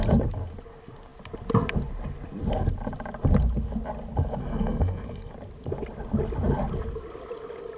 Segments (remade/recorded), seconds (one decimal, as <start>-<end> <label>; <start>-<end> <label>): 0.0-4.4 recorded; 4.4-5.3 remade; 5.3-7.8 recorded